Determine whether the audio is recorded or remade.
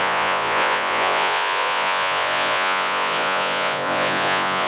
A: remade